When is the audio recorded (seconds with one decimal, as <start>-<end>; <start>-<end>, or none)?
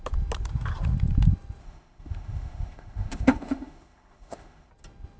0.0-1.6; 4.7-5.2